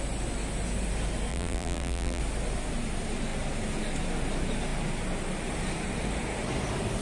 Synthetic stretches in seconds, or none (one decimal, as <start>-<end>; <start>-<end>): 1.3-2.2